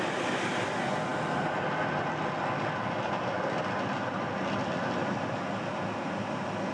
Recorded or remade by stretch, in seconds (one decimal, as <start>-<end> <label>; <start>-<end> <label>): 0.0-6.7 recorded